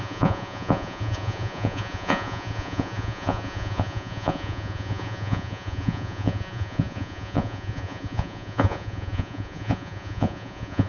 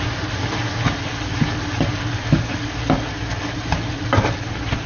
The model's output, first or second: first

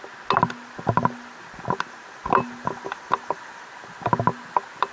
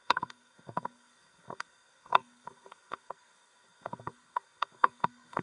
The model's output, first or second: second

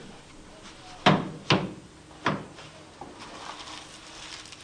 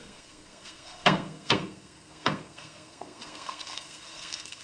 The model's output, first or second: second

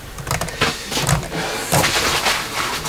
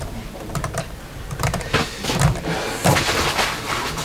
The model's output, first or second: second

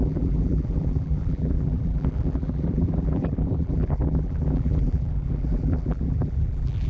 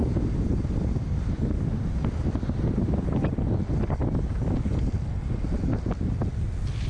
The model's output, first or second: first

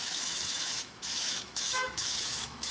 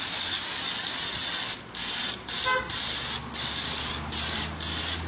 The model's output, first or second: first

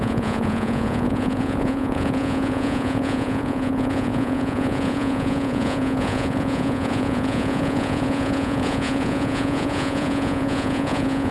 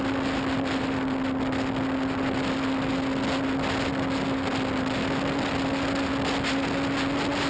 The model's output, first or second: first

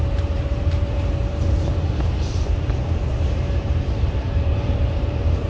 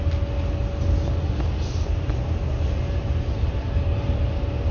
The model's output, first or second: first